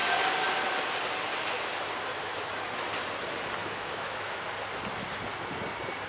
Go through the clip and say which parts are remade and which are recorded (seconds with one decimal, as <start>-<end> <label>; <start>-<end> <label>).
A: 0.0-2.1 recorded; 2.1-2.8 remade; 2.8-3.6 recorded; 3.6-4.4 remade; 4.4-6.1 recorded